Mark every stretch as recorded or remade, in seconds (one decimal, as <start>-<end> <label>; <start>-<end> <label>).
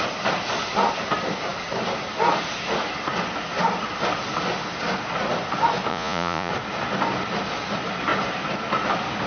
0.0-5.9 recorded; 5.9-6.5 remade; 6.5-9.3 recorded